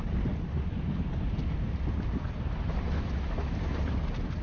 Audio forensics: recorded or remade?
recorded